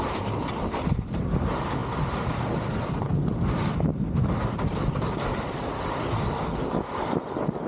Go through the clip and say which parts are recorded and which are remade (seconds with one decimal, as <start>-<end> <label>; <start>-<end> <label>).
0.0-7.7 recorded